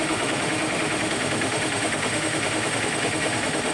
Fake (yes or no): yes